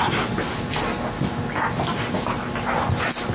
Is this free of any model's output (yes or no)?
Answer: yes